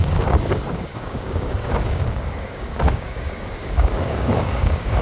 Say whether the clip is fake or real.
fake